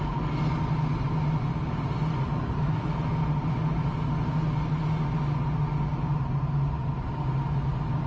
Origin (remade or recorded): recorded